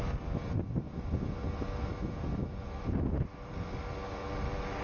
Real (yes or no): yes